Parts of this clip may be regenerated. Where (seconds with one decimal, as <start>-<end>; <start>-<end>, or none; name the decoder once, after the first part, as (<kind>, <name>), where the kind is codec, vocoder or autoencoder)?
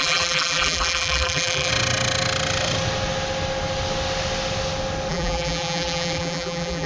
0.0-1.7 (vocoder, BigVGAN v2); 5.1-6.9